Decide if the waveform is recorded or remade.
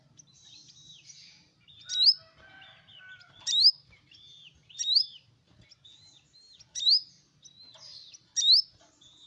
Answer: recorded